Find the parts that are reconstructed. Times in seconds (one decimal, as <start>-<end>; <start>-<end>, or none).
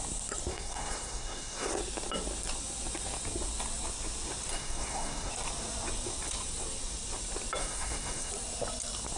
0.5-1.7; 4.5-5.3; 7.6-8.3